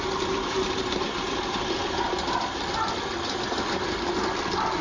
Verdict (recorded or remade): remade